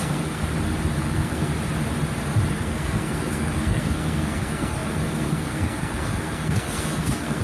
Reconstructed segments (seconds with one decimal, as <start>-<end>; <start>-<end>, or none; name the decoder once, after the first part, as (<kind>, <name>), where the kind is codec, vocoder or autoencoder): 0.0-0.4 (codec, SNAC); 1.0-1.5; 2.5-7.4